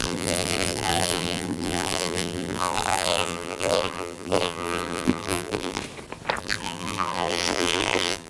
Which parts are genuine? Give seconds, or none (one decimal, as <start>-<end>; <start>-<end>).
5.8-6.4